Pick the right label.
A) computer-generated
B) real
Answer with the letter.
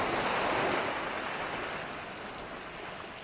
B